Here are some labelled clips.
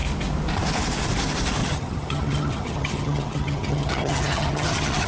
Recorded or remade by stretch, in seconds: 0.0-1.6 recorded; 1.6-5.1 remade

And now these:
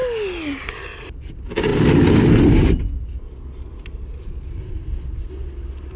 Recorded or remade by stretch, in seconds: 0.0-6.0 recorded